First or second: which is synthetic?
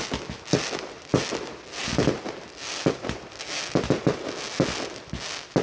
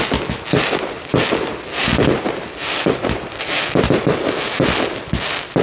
second